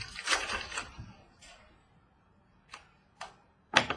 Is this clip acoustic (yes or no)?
no